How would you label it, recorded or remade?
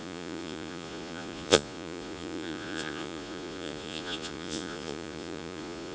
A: remade